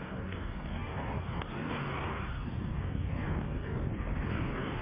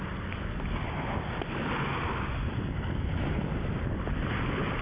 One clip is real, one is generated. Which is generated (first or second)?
first